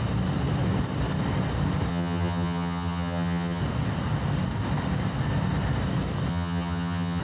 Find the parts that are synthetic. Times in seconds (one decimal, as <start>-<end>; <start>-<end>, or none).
1.9-3.6; 6.3-7.2

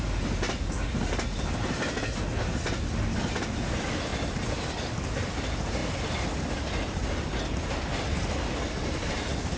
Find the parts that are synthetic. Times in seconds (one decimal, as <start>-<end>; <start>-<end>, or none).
none

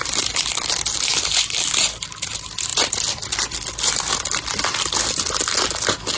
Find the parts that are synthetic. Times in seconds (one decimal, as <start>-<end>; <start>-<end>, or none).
none